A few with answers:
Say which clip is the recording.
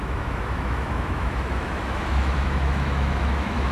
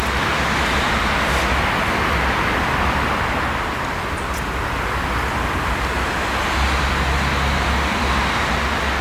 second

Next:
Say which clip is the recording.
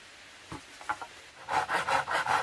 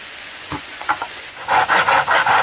first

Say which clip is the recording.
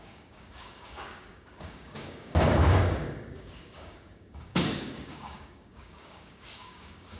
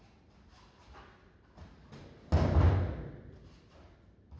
second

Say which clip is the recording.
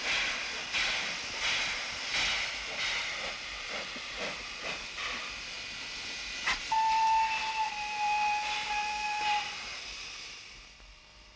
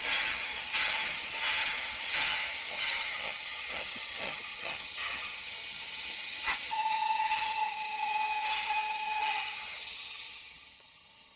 first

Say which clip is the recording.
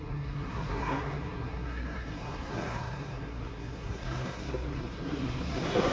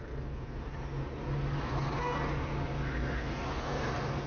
second